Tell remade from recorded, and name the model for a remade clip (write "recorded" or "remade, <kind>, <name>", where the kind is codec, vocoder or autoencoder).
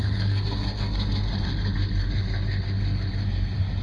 remade, codec, SNAC